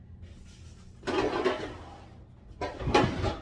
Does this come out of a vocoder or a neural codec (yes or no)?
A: no